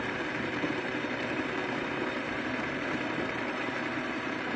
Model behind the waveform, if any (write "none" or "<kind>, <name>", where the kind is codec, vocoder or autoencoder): vocoder, BigVGAN v2